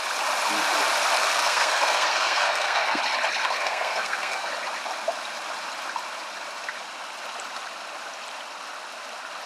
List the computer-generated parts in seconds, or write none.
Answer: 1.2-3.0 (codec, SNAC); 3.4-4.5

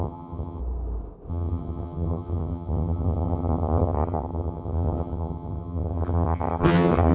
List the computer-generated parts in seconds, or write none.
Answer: 0.0-0.6 (vocoder, HiFi-GAN); 1.3-7.1

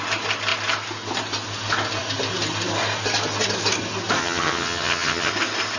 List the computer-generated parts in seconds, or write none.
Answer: 4.2-5.3 (vocoder, HiFi-GAN)

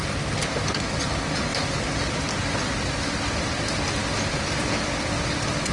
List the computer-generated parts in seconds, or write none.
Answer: 1.5-2.6 (vocoder, BigVGAN v2); 4.0-5.7

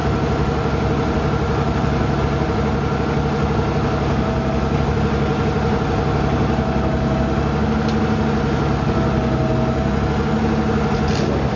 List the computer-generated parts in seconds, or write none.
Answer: none

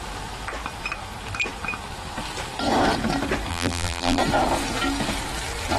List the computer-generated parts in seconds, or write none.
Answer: 3.5-4.2 (vocoder, BigVGAN v2)

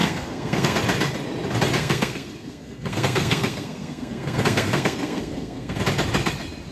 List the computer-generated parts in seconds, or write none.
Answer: 0.0-0.8 (codec, SNAC); 1.8-5.8